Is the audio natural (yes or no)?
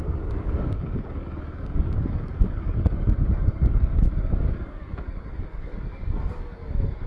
no